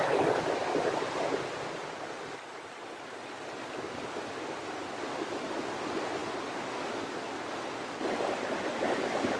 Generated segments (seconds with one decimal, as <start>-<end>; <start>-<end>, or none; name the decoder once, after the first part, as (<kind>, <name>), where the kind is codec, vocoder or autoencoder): none